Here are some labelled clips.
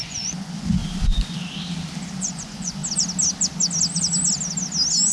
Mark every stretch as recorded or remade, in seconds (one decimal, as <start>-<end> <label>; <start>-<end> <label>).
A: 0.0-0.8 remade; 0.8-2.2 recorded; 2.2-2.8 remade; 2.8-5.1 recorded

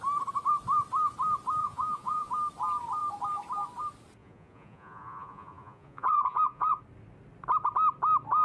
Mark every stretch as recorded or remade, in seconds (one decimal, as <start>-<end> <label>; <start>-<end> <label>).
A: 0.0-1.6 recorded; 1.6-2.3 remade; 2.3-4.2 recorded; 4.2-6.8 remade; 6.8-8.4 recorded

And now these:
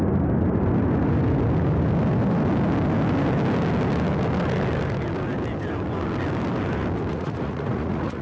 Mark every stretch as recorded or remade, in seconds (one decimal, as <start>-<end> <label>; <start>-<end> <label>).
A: 0.0-7.1 recorded; 7.1-8.2 remade

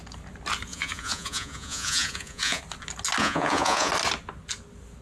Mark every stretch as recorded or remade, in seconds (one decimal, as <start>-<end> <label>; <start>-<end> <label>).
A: 0.0-0.7 recorded; 0.7-2.6 remade; 2.6-3.2 recorded; 3.2-3.9 remade; 3.9-5.0 recorded

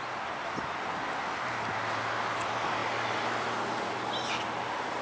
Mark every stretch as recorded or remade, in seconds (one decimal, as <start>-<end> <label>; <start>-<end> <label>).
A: 0.0-5.0 recorded

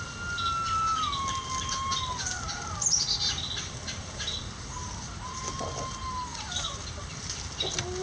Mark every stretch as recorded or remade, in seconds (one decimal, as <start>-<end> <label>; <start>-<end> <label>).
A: 0.0-8.0 recorded

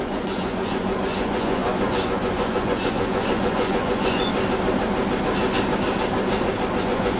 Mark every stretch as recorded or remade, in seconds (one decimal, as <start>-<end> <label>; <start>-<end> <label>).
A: 0.0-4.3 remade; 4.3-6.8 recorded; 6.8-7.2 remade